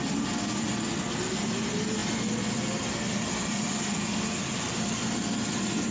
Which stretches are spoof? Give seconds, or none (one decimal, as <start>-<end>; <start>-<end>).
2.0-5.5